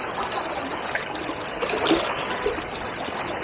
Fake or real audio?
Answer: real